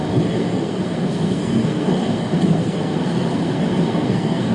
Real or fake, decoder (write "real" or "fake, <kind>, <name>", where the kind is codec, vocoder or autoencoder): fake, codec, SNAC